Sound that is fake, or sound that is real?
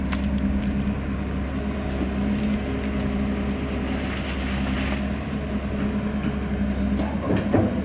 real